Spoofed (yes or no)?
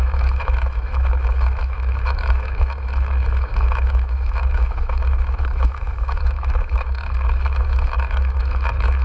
yes